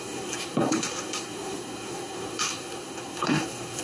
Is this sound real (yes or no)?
no